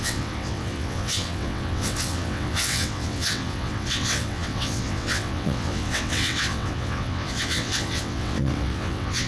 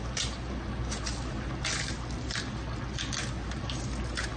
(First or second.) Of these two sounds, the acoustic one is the second